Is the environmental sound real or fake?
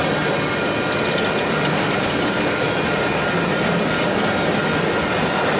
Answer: real